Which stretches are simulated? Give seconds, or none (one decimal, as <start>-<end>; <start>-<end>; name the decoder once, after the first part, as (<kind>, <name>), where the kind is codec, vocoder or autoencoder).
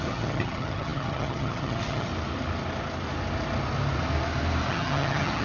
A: 0.0-2.1 (vocoder, HiFi-GAN); 4.7-5.4